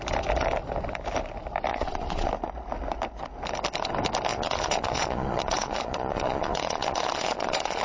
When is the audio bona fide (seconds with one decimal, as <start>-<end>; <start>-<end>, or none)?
0.0-1.7; 2.3-4.3